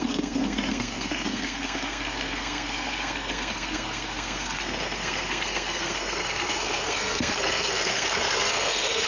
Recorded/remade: remade